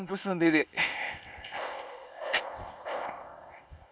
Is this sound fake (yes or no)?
yes